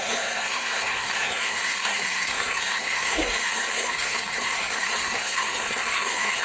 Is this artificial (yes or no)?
yes